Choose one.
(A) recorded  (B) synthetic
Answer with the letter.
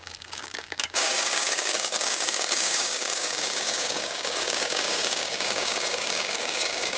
B